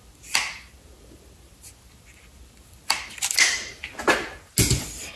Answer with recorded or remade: recorded